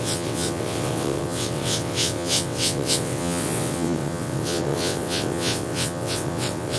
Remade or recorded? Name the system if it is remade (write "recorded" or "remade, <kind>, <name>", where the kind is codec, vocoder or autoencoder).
remade, vocoder, WaveNeXt